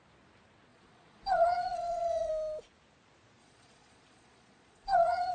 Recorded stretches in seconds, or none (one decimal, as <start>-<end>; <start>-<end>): 0.0-0.7; 2.3-3.4